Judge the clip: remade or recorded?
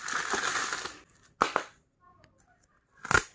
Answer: recorded